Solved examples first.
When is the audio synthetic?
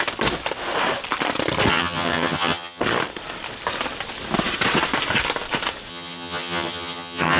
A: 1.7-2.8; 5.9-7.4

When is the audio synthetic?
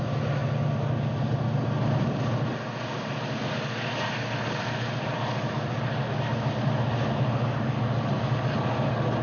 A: none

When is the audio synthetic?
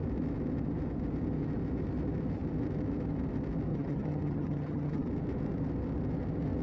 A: 3.7-5.1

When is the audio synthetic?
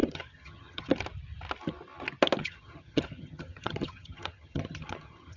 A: 0.0-0.9; 2.4-5.4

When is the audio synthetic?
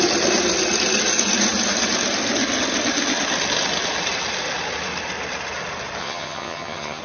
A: 6.0-7.0